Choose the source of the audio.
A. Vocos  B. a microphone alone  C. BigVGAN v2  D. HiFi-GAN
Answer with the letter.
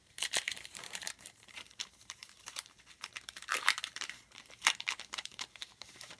C